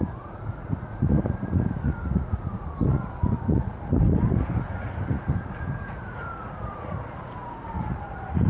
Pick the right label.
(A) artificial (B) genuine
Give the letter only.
A